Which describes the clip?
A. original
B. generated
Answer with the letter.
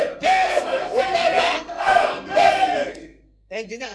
B